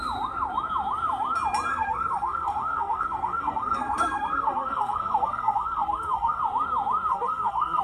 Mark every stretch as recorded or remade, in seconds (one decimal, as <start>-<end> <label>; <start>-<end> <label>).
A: 0.0-1.7 recorded; 1.7-6.4 remade; 6.4-7.1 recorded; 7.1-7.8 remade